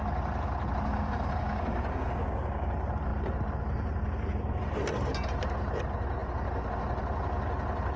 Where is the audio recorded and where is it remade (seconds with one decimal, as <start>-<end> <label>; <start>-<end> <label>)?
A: 0.0-0.9 recorded; 0.9-2.7 remade; 2.7-8.0 recorded